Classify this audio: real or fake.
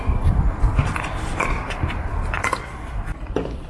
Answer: real